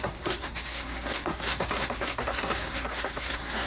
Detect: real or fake fake